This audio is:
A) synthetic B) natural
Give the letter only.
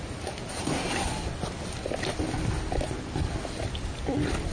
B